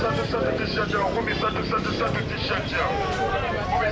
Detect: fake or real real